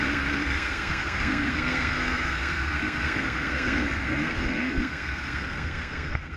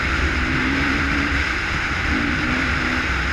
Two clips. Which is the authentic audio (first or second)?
second